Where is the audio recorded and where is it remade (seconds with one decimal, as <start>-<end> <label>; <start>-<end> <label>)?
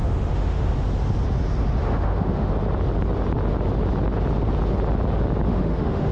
0.0-0.7 remade; 0.7-1.8 recorded; 1.8-2.5 remade; 2.5-5.5 recorded; 5.5-6.1 remade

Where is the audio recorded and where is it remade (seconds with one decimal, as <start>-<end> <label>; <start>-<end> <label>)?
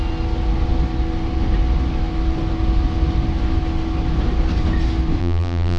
0.0-5.2 recorded; 5.2-5.8 remade